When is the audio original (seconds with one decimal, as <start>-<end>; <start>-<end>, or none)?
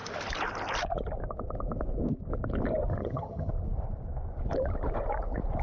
0.0-2.9; 3.5-5.6